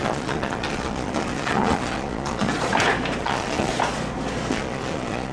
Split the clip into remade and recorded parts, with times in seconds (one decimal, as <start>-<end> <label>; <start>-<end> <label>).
0.0-2.5 remade; 2.5-3.2 recorded; 3.2-3.7 remade; 3.7-4.5 recorded; 4.5-5.3 remade